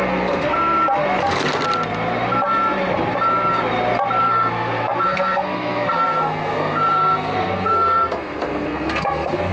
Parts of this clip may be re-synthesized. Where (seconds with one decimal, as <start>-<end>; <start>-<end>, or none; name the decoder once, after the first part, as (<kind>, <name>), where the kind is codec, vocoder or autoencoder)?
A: 0.0-0.5 (codec, SNAC); 4.2-9.5